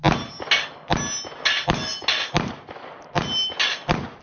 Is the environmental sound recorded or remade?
recorded